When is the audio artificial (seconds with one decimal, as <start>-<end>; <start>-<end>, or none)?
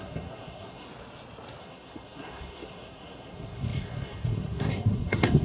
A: 0.0-0.9; 1.6-5.4